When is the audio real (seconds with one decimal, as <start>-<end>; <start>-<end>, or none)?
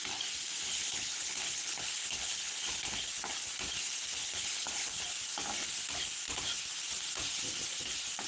0.0-0.7; 3.1-4.2; 5.0-8.3